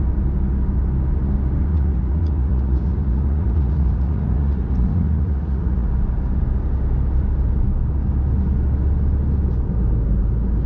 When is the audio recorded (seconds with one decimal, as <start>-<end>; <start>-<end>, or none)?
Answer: 0.0-1.7; 5.9-10.7